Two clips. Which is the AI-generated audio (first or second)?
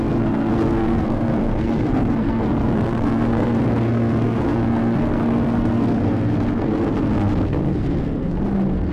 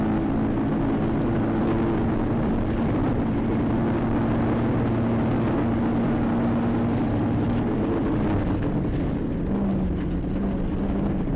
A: first